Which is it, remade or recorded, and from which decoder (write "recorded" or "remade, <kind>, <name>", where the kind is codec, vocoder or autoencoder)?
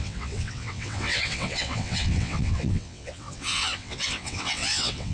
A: remade, vocoder, WaveNeXt